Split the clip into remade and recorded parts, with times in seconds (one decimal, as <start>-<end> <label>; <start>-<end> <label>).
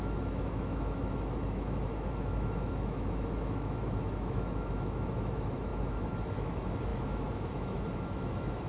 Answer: 0.0-8.7 remade